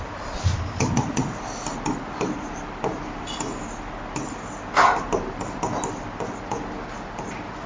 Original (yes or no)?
yes